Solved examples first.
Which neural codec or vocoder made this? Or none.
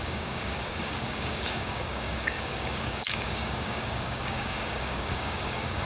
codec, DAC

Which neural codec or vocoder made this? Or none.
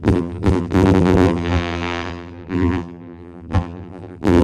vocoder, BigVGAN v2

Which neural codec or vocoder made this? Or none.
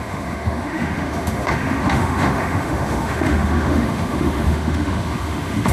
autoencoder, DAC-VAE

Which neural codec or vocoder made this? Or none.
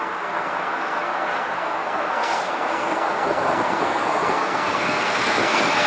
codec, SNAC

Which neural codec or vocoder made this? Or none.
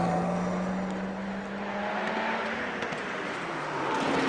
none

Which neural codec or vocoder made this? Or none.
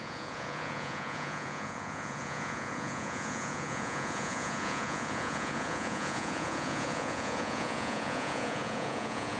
vocoder, Vocos